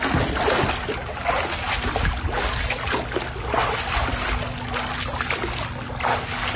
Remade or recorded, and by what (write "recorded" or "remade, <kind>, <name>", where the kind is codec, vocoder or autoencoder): recorded